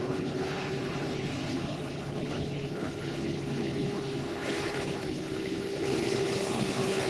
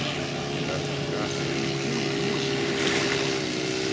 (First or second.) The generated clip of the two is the first